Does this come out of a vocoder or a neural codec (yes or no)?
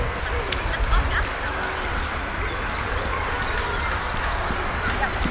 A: no